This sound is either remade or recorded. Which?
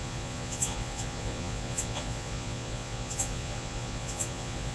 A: remade